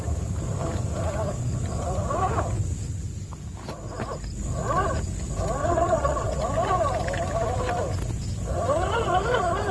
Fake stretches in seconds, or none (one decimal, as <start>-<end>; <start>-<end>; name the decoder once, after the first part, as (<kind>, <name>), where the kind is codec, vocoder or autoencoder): 5.6-6.4 (vocoder, WaveNeXt)